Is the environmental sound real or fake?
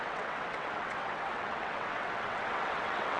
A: fake